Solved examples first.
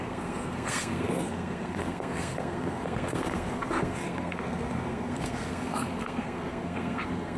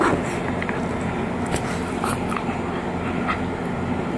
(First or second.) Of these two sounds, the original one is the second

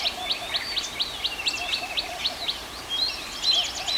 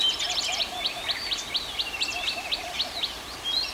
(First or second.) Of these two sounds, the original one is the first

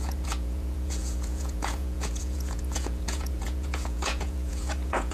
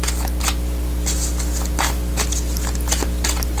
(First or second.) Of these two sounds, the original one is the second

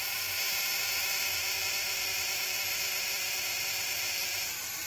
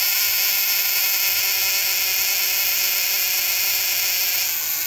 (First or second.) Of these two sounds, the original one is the second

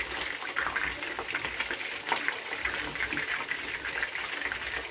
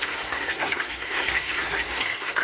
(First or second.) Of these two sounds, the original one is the first